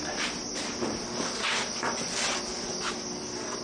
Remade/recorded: recorded